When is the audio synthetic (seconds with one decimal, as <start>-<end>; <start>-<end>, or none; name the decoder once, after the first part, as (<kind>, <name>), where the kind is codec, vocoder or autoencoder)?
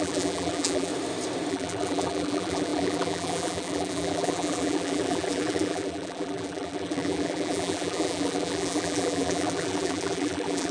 0.0-0.9 (vocoder, BigVGAN v2); 1.5-10.7